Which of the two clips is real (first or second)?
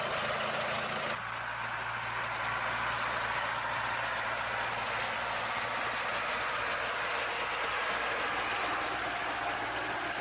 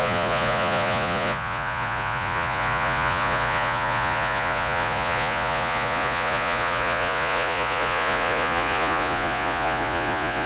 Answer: first